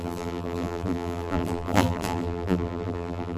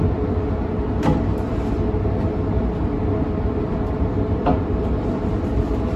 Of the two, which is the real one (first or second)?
second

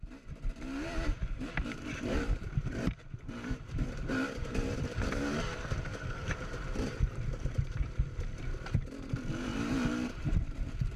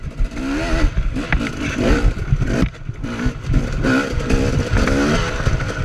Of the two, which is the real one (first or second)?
second